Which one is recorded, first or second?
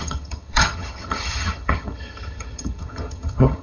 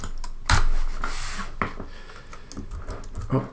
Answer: second